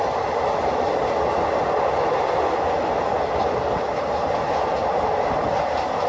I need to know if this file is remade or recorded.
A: recorded